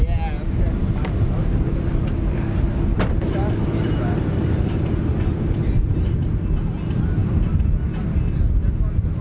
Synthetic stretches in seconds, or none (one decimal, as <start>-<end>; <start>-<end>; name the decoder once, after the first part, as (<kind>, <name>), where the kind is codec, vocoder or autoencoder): none